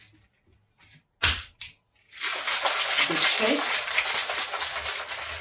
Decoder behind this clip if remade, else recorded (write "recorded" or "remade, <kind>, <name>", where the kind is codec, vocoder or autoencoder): recorded